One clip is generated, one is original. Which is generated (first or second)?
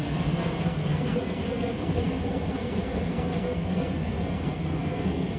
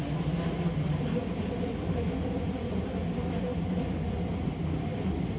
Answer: first